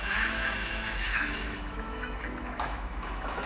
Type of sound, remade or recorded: remade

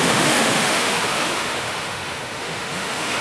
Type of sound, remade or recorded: remade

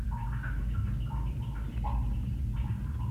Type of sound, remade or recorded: recorded